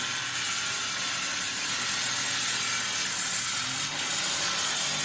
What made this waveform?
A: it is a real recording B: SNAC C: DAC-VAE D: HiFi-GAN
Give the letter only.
A